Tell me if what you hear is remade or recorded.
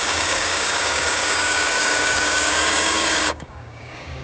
remade